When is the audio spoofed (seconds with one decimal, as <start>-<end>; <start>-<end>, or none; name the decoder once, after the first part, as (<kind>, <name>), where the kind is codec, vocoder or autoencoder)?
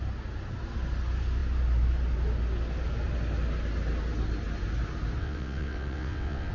5.2-6.5 (vocoder, WaveNeXt)